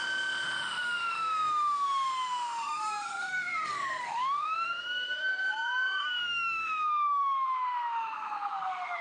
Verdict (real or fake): fake